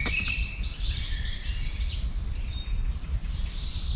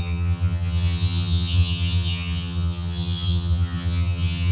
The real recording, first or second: first